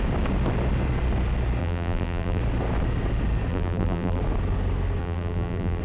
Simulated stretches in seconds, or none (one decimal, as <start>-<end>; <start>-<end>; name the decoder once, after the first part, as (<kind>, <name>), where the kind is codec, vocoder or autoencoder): 1.6-2.4 (vocoder, BigVGAN v2); 3.5-4.2; 5.0-5.8